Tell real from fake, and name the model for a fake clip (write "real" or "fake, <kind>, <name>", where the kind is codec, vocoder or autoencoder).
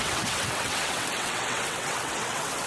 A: fake, vocoder, WaveNeXt